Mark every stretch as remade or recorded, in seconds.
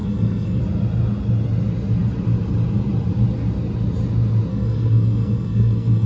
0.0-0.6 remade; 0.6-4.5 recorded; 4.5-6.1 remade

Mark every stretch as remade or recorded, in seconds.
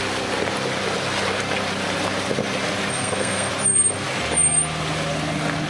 0.0-2.9 recorded; 2.9-3.5 remade; 3.5-5.7 recorded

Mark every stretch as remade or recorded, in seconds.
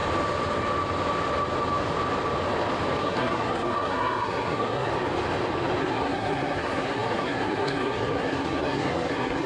0.0-3.0 recorded; 3.0-4.9 remade; 4.9-5.8 recorded; 5.8-9.5 remade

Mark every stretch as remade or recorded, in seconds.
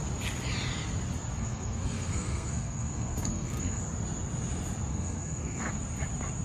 0.0-1.4 recorded; 1.4-3.8 remade; 3.8-4.9 recorded; 4.9-5.7 remade; 5.7-6.4 recorded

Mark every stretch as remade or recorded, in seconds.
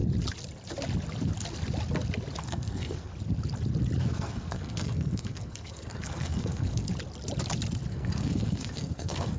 0.0-2.4 recorded; 2.4-3.1 remade; 3.1-4.0 recorded; 4.0-6.9 remade; 6.9-7.9 recorded; 7.9-9.4 remade